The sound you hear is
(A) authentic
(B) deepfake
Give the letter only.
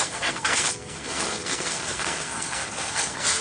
B